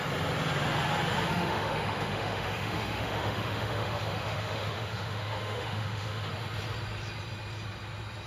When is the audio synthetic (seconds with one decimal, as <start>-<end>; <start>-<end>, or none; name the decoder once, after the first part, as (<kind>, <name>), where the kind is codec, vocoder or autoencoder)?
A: 1.3-6.3 (autoencoder, DAC-VAE)